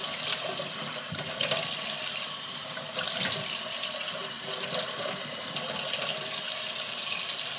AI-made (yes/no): no